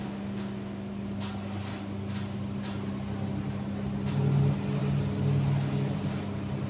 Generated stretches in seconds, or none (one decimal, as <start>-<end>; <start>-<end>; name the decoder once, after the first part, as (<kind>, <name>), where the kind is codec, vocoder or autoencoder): none